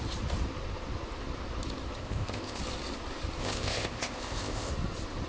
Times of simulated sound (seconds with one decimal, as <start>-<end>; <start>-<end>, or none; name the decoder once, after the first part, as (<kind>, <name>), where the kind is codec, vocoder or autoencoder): 2.0-2.6 (codec, ZipCodec); 3.4-4.7